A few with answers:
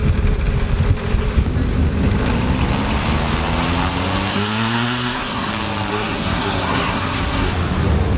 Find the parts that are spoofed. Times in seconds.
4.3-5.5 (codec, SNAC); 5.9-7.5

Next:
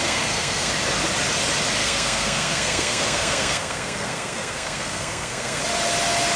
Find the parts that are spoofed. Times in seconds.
0.0-0.7 (codec, SNAC); 1.8-5.6

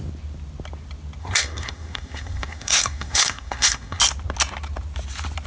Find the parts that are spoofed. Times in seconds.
1.2-4.0 (codec, SNAC)

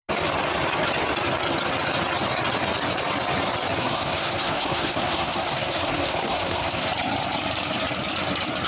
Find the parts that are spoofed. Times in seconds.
3.8-6.9 (codec, SNAC)

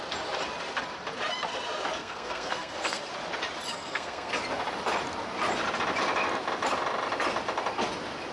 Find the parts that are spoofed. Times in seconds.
2.0-3.0 (codec, SNAC); 3.7-4.3

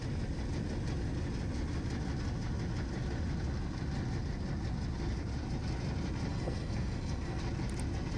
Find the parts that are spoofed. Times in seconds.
6.3-7.4 (codec, SNAC)

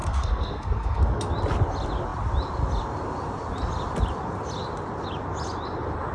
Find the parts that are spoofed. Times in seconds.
0.0-1.2 (codec, SNAC)